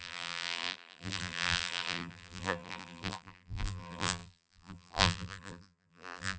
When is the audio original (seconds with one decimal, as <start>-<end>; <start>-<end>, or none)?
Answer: none